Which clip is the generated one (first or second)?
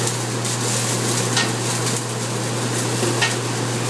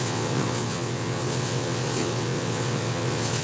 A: second